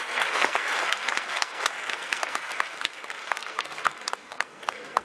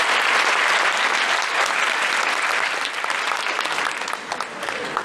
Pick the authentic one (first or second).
second